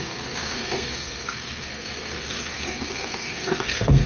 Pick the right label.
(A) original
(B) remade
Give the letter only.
B